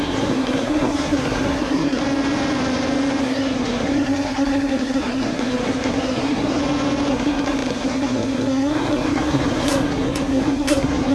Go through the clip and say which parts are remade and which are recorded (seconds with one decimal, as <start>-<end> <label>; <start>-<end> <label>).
0.0-2.0 remade; 2.0-3.2 recorded; 3.2-6.6 remade; 6.6-7.1 recorded; 7.1-11.1 remade